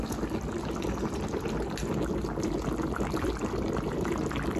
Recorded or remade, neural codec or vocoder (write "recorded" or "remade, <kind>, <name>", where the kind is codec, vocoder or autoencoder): recorded